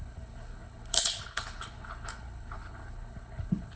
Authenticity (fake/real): fake